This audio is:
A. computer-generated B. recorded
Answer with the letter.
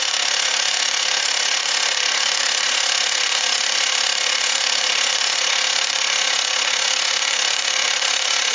A